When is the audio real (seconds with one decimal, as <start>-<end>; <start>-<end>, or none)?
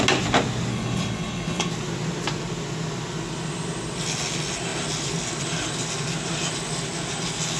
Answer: 0.0-0.7; 1.7-7.6